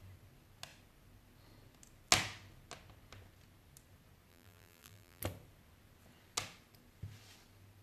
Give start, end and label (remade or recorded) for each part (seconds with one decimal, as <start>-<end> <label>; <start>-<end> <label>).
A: 0.0-4.3 recorded; 4.3-5.2 remade; 5.2-7.8 recorded